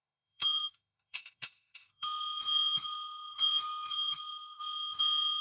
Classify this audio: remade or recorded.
remade